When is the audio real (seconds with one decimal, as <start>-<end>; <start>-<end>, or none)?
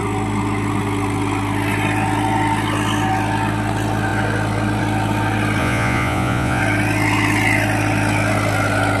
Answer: 0.0-5.6; 6.6-9.0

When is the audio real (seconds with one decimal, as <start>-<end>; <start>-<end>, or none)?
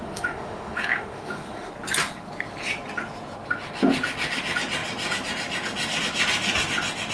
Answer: 1.7-7.1